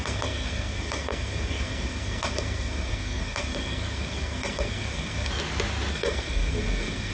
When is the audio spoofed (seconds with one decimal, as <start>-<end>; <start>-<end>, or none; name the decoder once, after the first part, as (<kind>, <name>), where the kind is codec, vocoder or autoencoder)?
0.0-5.3 (codec, SNAC); 5.9-7.1

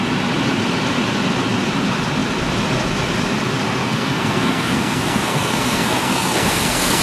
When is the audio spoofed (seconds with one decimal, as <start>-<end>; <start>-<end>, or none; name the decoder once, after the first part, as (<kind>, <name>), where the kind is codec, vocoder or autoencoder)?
3.8-7.0 (codec, SNAC)

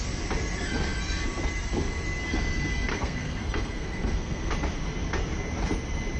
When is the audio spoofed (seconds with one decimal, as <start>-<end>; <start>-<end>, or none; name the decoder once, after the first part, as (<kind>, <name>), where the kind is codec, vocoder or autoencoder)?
2.9-4.5 (codec, SNAC)